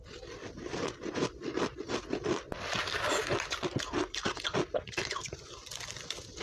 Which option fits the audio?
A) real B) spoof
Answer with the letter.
A